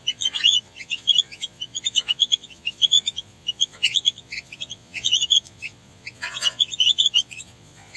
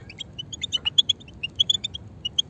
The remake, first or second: first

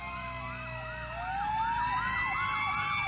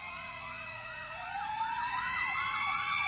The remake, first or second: second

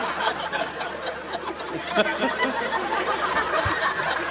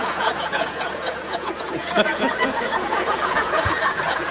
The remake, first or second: second